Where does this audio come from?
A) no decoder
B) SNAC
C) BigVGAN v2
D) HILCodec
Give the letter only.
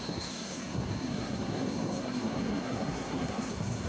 B